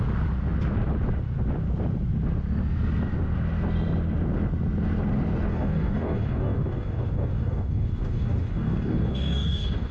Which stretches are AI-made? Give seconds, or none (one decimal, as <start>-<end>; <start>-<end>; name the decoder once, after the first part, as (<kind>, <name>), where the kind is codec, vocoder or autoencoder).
5.5-9.9 (codec, DAC)